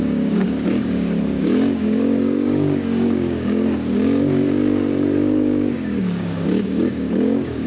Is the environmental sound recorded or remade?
remade